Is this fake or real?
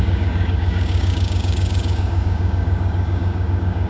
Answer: fake